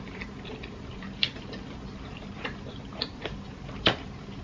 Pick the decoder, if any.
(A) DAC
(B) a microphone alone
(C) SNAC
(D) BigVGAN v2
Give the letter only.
D